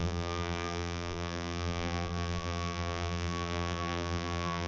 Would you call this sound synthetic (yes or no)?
yes